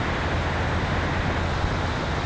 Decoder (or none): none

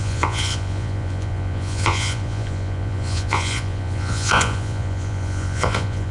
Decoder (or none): vocoder, Vocos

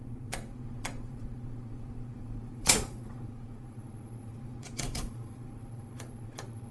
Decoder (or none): vocoder, Vocos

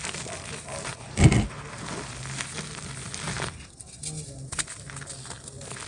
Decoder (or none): none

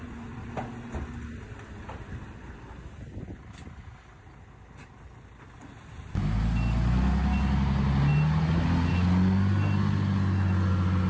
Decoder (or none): none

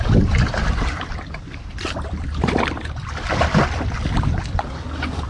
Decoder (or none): vocoder, BigVGAN v2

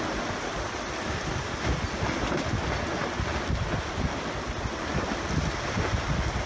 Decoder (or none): none